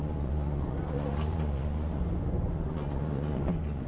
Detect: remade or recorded remade